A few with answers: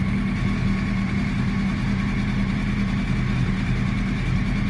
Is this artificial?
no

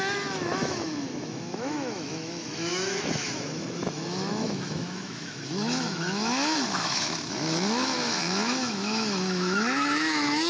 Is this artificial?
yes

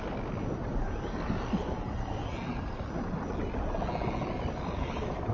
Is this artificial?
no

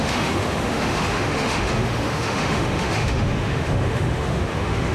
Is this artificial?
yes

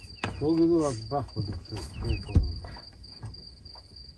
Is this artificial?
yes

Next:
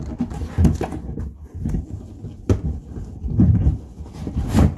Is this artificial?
no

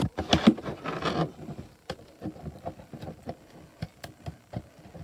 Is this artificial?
no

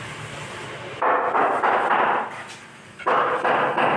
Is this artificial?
no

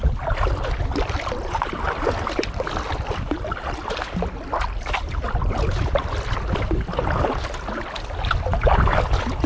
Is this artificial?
no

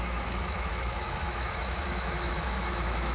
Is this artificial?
yes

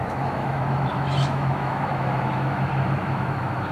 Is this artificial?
yes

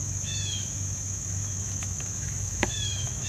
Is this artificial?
yes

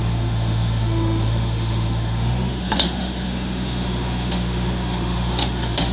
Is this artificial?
yes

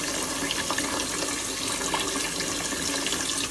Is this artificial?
no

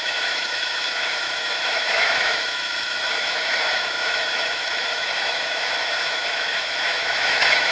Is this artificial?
yes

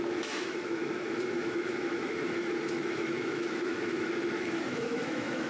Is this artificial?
yes